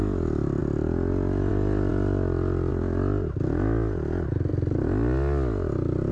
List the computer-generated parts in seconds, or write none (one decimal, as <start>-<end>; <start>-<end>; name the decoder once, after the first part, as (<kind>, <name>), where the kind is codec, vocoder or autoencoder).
none